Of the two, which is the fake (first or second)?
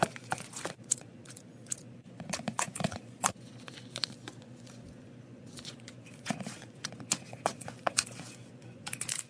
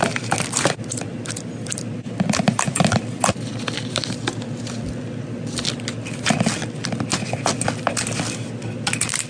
first